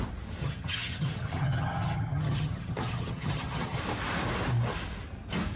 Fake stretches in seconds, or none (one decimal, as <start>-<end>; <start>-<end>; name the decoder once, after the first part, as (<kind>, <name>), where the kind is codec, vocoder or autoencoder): 0.4-3.8 (vocoder, HiFi-GAN)